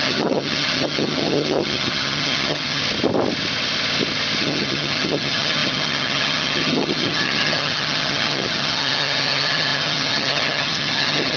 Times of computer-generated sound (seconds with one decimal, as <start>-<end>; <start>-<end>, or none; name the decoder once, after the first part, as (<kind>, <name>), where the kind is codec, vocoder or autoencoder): 0.0-2.8 (vocoder, HiFi-GAN); 4.4-11.4